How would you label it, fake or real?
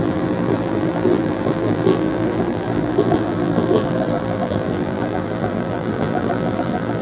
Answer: fake